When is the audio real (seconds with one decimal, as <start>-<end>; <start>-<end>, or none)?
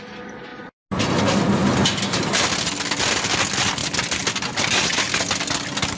0.0-1.6; 2.2-3.8; 4.3-6.0